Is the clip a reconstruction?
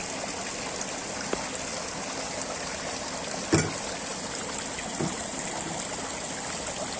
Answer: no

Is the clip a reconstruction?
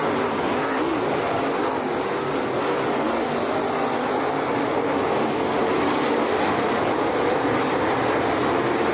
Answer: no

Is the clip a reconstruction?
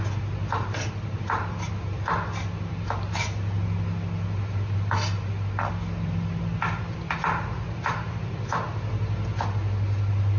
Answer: no